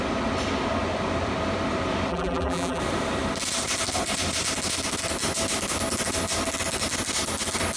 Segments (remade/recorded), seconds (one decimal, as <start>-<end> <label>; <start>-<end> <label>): 0.0-2.1 recorded; 2.1-2.8 remade; 2.8-7.8 recorded